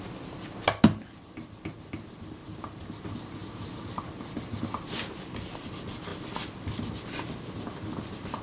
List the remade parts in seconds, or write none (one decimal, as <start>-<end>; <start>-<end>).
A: 3.4-4.0